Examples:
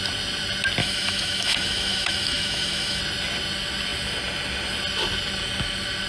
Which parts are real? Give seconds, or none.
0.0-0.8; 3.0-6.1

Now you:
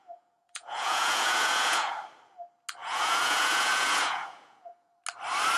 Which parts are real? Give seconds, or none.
2.0-2.8; 5.0-5.6